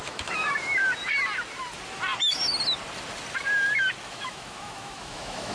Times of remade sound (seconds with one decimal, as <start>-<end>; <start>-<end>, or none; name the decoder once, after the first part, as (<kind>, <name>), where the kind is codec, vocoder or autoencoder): 0.0-0.8 (autoencoder, DAC-VAE); 4.1-5.5